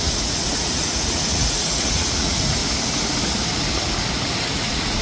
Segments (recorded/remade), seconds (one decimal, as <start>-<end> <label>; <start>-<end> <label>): 0.0-2.6 remade; 2.6-4.4 recorded; 4.4-5.0 remade